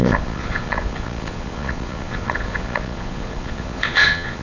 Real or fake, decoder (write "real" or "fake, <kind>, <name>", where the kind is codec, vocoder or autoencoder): fake, vocoder, Vocos